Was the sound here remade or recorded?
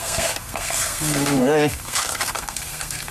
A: remade